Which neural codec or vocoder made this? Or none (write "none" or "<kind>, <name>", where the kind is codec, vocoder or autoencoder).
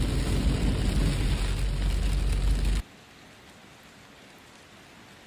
none